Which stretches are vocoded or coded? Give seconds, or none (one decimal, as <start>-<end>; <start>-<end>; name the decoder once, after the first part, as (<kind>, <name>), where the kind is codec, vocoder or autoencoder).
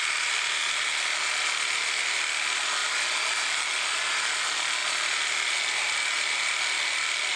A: none